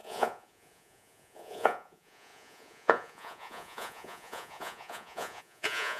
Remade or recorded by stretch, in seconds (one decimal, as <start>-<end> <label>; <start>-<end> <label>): 0.0-6.0 remade